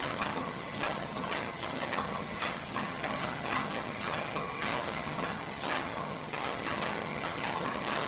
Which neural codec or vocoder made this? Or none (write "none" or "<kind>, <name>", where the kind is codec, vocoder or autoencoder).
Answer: vocoder, HiFi-GAN